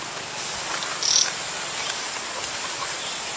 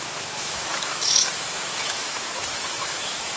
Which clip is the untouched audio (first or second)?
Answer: first